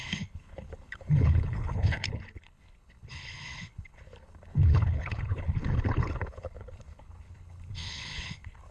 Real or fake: fake